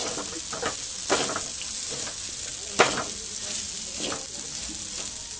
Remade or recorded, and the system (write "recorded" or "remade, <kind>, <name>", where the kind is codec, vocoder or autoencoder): recorded